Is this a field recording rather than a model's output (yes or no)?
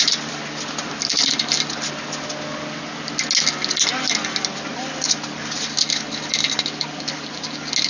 yes